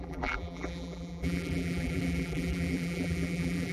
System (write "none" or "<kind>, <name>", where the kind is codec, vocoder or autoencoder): vocoder, BigVGAN v2